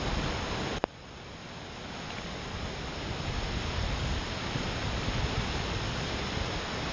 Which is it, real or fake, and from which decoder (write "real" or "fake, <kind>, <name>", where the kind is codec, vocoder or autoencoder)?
real